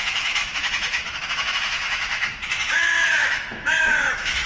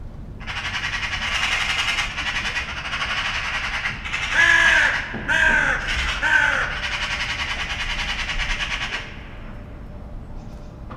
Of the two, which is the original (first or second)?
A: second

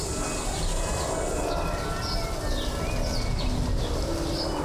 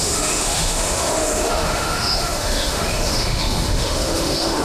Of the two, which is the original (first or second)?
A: first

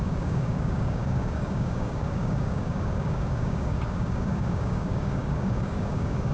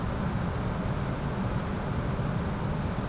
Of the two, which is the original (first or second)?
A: second